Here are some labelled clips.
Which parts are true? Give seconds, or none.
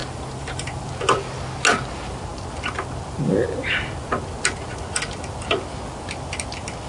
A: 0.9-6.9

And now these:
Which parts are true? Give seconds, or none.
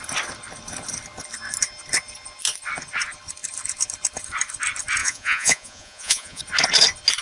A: 0.0-5.0; 6.4-7.2